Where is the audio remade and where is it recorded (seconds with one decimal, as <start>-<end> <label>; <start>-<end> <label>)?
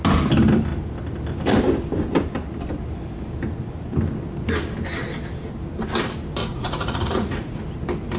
0.0-6.4 recorded; 6.4-7.6 remade; 7.6-8.2 recorded